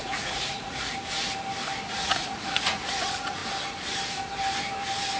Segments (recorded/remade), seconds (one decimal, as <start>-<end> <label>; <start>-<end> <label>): 0.0-0.9 remade; 0.9-1.9 recorded; 1.9-3.4 remade; 3.4-5.2 recorded